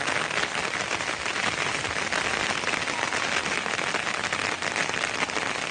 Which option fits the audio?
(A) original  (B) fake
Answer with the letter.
A